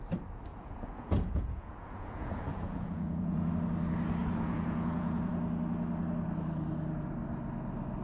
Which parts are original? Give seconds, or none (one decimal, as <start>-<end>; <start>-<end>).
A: 0.0-0.5; 3.5-4.2; 5.3-8.0